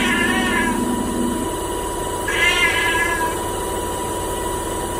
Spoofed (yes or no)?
no